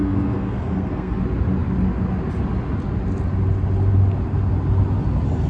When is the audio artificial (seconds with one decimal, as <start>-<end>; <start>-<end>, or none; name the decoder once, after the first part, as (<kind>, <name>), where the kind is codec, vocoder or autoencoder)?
0.0-1.2 (codec, SNAC)